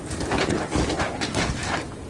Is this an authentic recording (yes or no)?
yes